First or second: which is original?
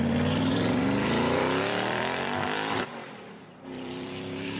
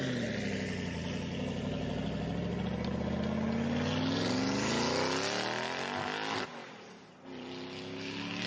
second